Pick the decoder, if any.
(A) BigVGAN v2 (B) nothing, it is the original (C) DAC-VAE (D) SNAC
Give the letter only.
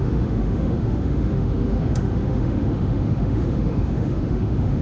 C